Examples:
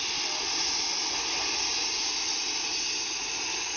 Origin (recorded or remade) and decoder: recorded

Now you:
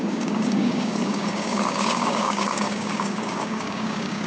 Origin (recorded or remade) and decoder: remade, codec, DAC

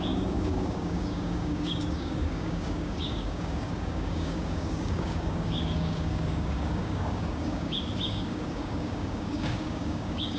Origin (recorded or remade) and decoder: remade, codec, DAC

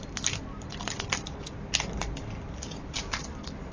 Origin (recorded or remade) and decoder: recorded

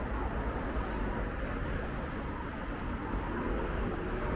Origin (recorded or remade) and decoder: recorded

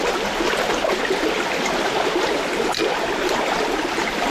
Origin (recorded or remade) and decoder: recorded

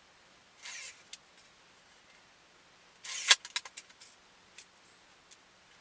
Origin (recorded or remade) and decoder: recorded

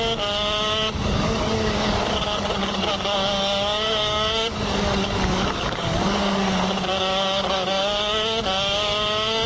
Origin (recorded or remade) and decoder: remade, codec, DAC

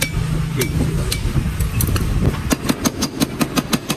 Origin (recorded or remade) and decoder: recorded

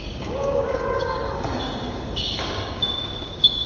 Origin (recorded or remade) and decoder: remade, codec, DAC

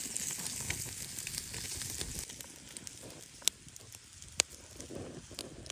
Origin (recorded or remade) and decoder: recorded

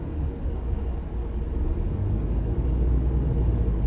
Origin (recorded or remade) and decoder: remade, codec, DAC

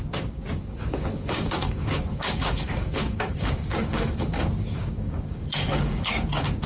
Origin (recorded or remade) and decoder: remade, codec, DAC